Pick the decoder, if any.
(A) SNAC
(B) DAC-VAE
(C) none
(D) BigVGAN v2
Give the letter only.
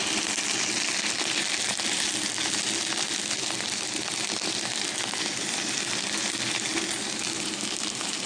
C